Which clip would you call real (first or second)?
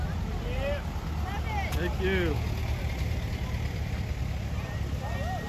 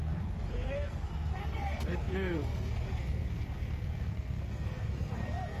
first